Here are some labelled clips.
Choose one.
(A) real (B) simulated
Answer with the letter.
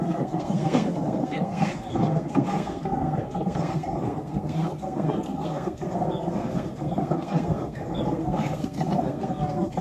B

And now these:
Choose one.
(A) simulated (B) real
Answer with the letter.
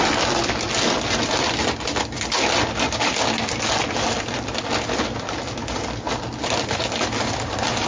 B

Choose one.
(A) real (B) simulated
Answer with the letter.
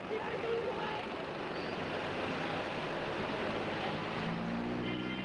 A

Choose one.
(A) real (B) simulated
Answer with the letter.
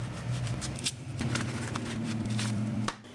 B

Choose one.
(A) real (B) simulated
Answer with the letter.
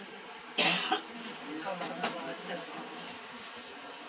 A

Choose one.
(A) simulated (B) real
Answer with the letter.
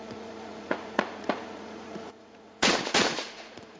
A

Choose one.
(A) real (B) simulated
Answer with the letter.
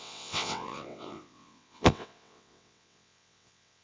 B